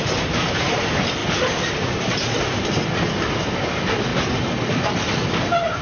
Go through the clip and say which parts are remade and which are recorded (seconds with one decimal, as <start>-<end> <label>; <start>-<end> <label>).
0.0-1.2 recorded; 1.2-2.4 remade; 2.4-5.8 recorded